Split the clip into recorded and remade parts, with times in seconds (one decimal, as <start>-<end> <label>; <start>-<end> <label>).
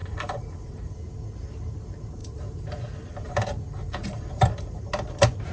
0.0-1.0 remade; 1.0-2.2 recorded; 2.2-4.8 remade; 4.8-5.5 recorded